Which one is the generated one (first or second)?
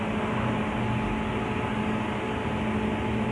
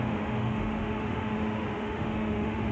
second